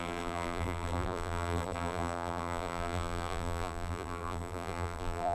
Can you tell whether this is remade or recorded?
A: remade